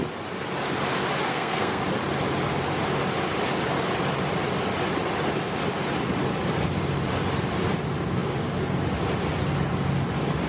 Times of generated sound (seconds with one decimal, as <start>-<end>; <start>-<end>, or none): 1.3-1.8